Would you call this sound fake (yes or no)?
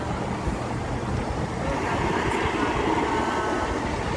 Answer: no